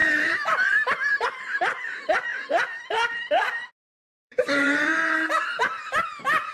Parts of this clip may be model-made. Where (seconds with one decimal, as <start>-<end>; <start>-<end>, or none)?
0.0-6.5